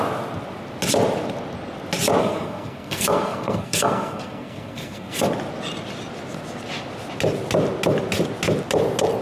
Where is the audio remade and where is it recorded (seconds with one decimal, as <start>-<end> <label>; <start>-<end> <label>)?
0.0-2.2 recorded; 2.2-5.2 remade; 5.2-9.2 recorded